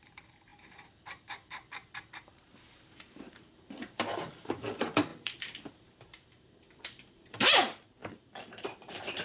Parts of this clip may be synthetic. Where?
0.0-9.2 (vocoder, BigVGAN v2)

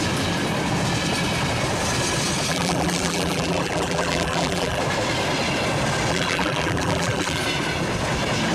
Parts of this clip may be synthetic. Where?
2.5-4.8 (vocoder, BigVGAN v2); 6.1-7.4

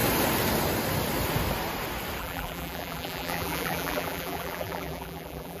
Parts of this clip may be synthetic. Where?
2.2-5.6 (vocoder, BigVGAN v2)